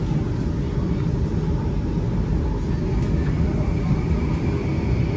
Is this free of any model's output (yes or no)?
yes